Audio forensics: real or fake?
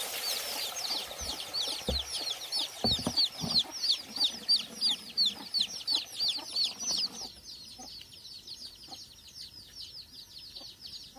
real